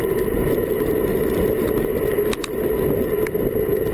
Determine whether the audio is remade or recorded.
recorded